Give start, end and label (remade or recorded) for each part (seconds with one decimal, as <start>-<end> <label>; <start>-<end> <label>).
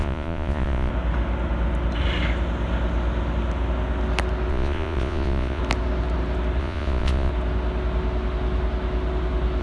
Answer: 0.0-0.9 remade; 0.9-4.5 recorded; 4.5-5.6 remade; 5.6-6.6 recorded; 6.6-7.3 remade; 7.3-9.6 recorded